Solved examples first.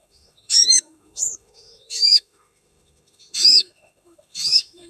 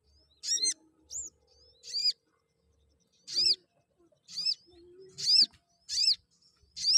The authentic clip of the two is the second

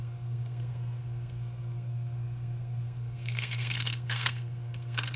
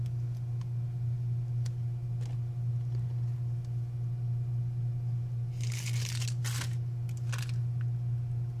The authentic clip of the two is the second